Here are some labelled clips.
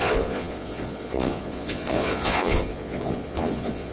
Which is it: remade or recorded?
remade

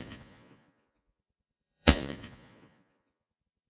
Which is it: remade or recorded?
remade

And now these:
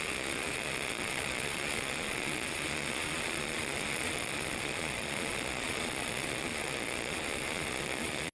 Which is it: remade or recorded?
remade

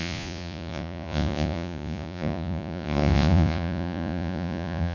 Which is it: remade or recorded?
remade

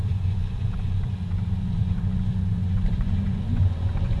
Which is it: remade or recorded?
remade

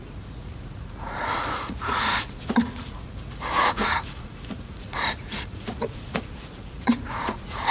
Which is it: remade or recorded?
remade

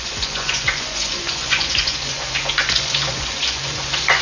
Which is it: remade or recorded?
remade